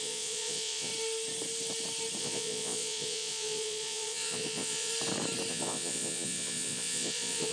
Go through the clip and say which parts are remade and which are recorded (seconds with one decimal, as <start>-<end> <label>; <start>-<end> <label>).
0.0-0.9 remade; 0.9-2.2 recorded; 2.2-4.9 remade; 4.9-5.5 recorded; 5.5-7.5 remade